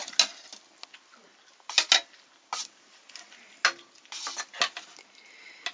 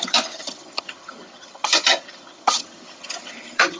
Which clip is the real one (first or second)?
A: first